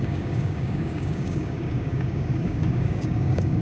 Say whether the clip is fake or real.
fake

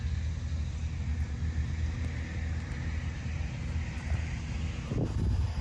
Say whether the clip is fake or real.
real